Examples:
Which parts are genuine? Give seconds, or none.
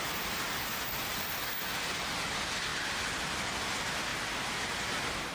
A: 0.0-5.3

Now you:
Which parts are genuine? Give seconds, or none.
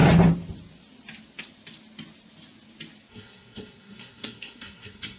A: 0.0-3.1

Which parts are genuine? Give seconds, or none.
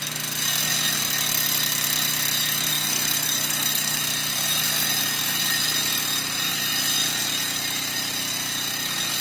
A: 0.0-2.7; 4.0-9.2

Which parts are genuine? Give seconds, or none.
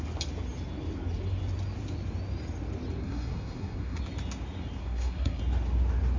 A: 0.0-3.0; 4.0-4.8; 5.4-6.2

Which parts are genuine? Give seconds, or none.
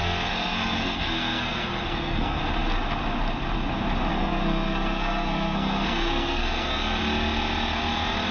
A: 2.4-4.1; 7.0-8.3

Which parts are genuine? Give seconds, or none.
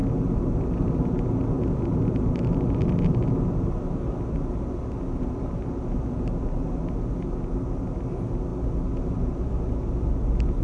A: 0.0-10.6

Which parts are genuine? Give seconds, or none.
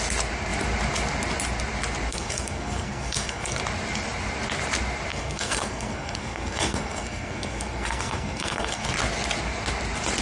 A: 0.0-2.1; 3.6-5.1; 8.9-10.2